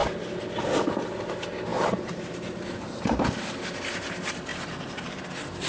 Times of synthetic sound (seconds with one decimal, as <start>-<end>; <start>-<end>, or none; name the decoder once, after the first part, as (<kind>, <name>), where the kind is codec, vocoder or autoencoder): 1.7-3.3 (vocoder, BigVGAN v2); 4.5-5.2